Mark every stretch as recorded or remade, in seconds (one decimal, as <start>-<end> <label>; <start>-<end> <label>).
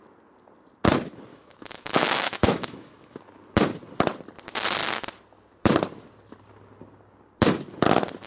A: 0.0-1.3 recorded; 1.3-3.2 remade; 3.2-8.3 recorded